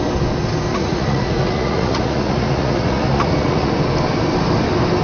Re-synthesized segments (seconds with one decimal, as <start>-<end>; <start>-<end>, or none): 0.7-3.7